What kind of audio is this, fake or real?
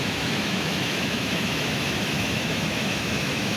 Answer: fake